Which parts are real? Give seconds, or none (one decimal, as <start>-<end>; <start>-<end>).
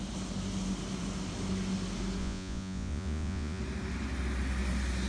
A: 0.0-2.2; 3.6-5.1